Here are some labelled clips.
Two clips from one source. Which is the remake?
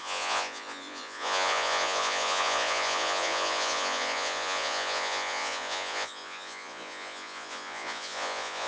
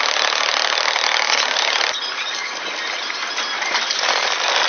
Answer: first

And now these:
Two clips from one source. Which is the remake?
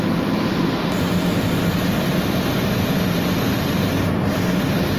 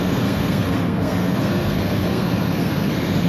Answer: second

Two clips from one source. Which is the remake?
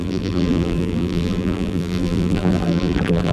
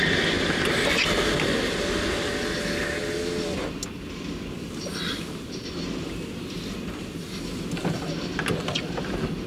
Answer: first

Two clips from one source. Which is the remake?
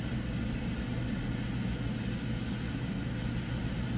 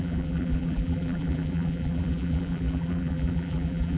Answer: second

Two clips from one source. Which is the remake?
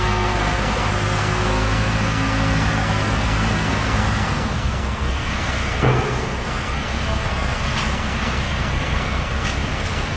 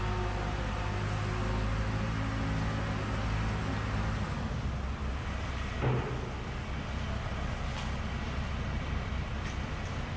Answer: first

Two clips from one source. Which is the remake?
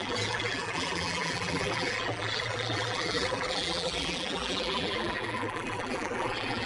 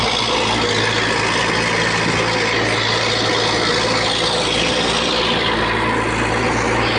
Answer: first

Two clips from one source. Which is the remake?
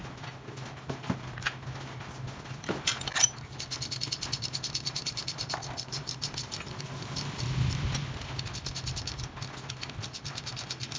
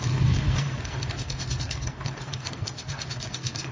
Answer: second